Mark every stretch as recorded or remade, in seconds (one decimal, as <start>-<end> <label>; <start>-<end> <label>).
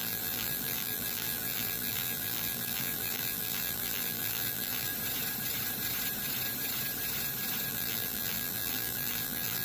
0.0-4.9 remade; 4.9-7.7 recorded; 7.7-9.6 remade